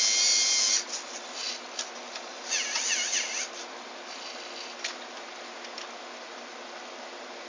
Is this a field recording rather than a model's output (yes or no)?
yes